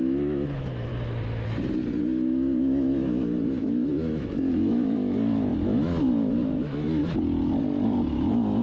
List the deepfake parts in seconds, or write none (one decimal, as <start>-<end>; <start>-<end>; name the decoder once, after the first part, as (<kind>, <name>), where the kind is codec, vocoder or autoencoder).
0.0-0.9 (autoencoder, DAC-VAE); 2.0-7.0; 8.1-8.6